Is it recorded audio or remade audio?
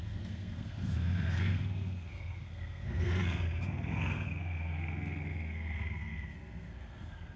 remade